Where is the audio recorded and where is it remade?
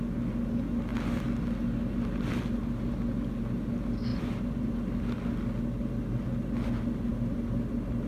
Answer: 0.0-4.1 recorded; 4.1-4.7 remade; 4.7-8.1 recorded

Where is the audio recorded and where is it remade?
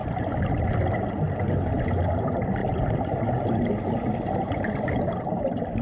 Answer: 0.0-5.8 recorded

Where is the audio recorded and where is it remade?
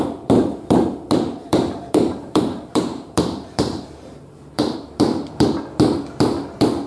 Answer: 0.0-1.4 recorded; 1.4-5.5 remade; 5.5-6.9 recorded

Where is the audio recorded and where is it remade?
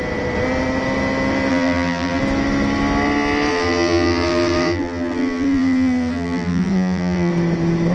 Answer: 0.0-1.5 recorded; 1.5-2.2 remade; 2.2-3.5 recorded; 3.5-7.3 remade; 7.3-7.9 recorded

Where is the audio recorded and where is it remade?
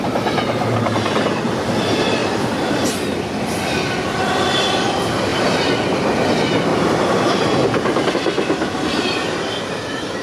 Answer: 0.0-2.2 recorded; 2.2-4.2 remade; 4.2-6.7 recorded; 6.7-8.1 remade; 8.1-10.2 recorded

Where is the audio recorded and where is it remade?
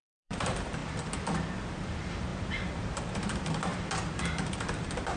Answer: 0.0-0.8 remade; 0.8-1.6 recorded; 1.6-5.2 remade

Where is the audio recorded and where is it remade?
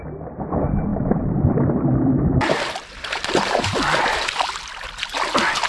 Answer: 0.0-0.9 recorded; 0.9-4.3 remade; 4.3-5.7 recorded